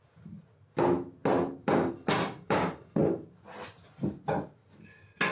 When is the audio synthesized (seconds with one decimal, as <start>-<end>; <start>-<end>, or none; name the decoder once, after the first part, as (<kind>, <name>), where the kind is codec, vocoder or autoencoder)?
none